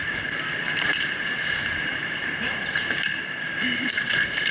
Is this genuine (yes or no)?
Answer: no